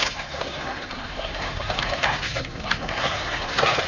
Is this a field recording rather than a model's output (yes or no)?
no